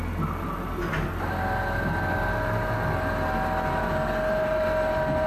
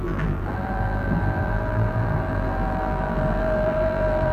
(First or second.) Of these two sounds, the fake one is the second